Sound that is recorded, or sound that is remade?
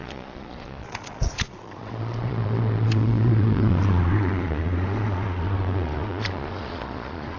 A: remade